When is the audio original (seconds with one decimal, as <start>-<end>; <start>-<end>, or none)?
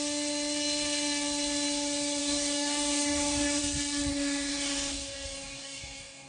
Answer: 0.0-2.2; 3.6-4.1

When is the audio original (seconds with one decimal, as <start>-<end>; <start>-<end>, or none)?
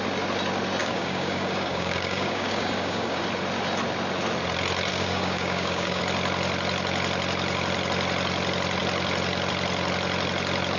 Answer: 0.0-0.8; 3.2-4.9; 6.0-10.8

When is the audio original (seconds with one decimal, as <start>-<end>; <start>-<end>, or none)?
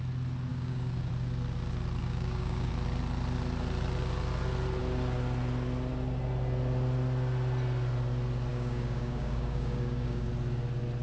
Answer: 0.0-0.5; 1.1-2.0; 2.7-8.5; 10.3-11.0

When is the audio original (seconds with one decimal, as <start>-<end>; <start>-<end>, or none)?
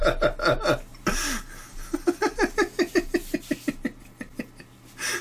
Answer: 0.0-5.2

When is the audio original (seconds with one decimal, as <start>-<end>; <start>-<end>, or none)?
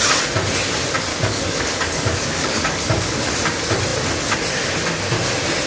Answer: 0.0-1.1; 3.3-5.7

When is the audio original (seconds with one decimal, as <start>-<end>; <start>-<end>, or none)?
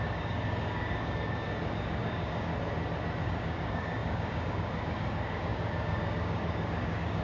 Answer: 2.5-3.2